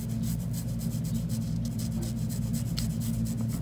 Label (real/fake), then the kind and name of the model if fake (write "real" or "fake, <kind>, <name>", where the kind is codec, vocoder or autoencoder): real